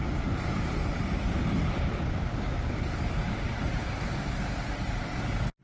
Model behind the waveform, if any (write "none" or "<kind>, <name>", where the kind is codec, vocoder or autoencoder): vocoder, BigVGAN v2